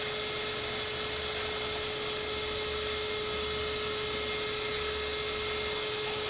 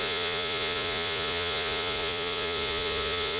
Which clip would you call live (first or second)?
first